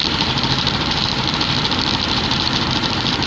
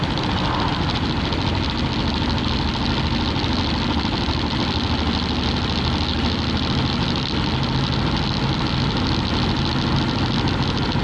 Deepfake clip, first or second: first